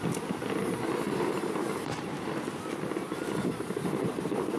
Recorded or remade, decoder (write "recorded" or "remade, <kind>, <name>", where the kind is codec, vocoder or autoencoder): recorded